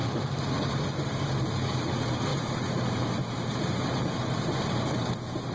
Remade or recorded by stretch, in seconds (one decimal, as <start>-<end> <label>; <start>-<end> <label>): 0.0-5.5 remade